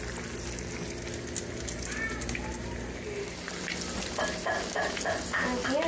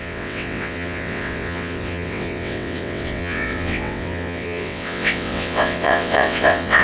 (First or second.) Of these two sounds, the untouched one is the first